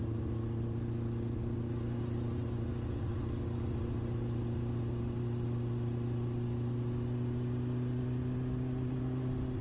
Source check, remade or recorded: recorded